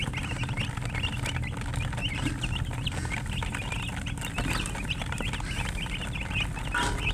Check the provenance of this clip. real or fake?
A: real